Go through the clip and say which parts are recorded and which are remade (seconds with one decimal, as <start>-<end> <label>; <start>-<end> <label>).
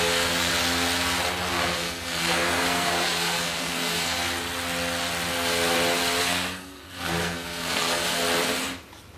0.0-0.5 remade; 0.5-1.5 recorded; 1.5-4.2 remade; 4.2-6.2 recorded; 6.2-8.2 remade; 8.2-9.2 recorded